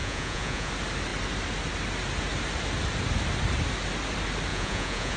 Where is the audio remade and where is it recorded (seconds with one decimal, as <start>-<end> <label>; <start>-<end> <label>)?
0.0-0.7 remade; 0.7-4.5 recorded; 4.5-5.2 remade